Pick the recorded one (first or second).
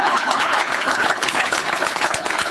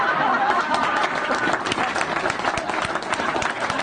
second